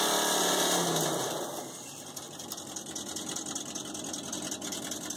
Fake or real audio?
real